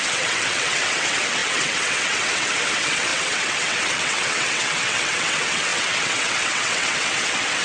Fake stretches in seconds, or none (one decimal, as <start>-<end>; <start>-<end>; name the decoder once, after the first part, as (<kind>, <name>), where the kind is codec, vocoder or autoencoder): 0.0-7.6 (vocoder, WaveNeXt)